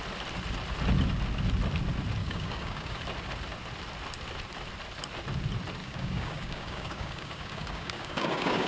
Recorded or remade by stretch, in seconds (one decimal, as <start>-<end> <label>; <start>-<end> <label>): 0.0-2.2 recorded; 2.2-3.0 remade; 3.0-5.8 recorded; 5.8-8.7 remade